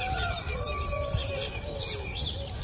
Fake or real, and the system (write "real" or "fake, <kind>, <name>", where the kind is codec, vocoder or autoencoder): fake, vocoder, BigVGAN v2